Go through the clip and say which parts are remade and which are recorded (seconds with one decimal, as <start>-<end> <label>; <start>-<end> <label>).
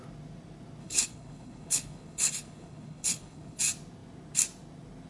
0.0-0.8 recorded; 0.8-3.6 remade; 3.6-5.1 recorded